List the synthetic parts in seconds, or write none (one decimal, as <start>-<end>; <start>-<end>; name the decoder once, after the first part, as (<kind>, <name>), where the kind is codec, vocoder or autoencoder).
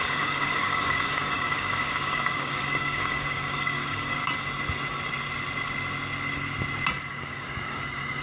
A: 0.0-4.2 (codec, DAC); 7.1-8.2